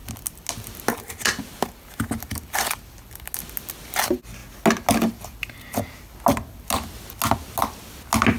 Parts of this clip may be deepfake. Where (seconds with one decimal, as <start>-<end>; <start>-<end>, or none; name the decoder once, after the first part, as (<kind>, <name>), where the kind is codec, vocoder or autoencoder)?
none